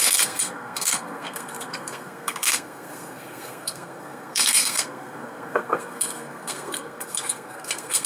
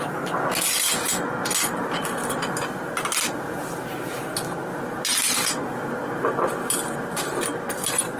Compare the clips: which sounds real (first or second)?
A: second